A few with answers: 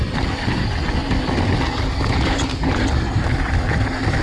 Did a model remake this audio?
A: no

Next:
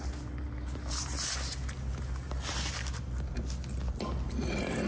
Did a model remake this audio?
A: no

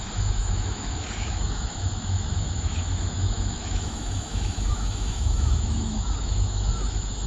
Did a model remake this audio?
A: yes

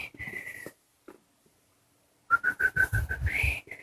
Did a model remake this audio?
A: no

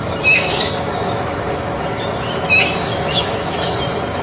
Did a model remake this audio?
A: yes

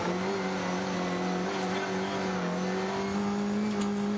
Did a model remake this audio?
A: no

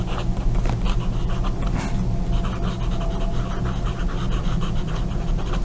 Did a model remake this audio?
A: no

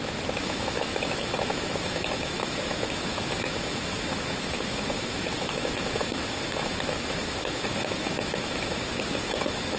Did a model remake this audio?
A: yes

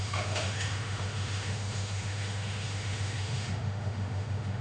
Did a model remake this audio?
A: yes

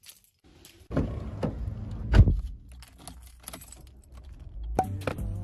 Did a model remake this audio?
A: no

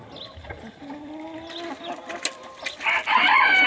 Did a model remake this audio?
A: no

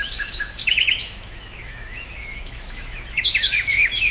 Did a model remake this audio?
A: yes